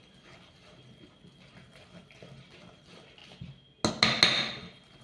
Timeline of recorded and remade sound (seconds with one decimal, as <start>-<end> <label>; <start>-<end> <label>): 0.0-5.0 recorded

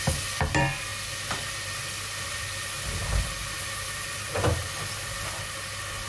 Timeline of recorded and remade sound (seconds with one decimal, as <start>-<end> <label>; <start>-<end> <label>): 0.0-3.4 recorded; 3.4-4.3 remade; 4.3-6.1 recorded